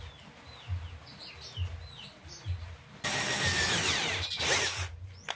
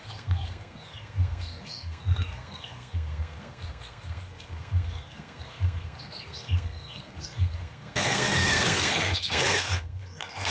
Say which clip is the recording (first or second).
first